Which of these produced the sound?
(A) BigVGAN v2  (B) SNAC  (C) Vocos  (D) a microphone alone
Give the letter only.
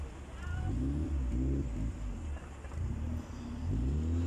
D